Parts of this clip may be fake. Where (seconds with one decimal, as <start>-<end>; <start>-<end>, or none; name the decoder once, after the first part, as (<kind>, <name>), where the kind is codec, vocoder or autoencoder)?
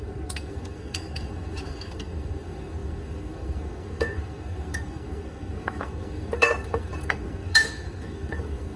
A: 0.0-8.8 (codec, SNAC)